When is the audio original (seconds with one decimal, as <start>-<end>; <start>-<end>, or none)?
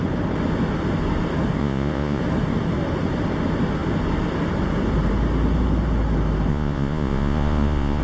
0.0-1.6; 2.2-6.5